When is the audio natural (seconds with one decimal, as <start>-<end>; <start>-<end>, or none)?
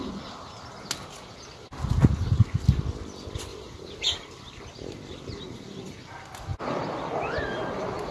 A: 0.0-3.5; 4.3-8.1